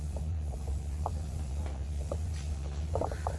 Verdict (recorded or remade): remade